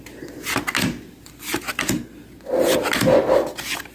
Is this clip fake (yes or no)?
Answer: no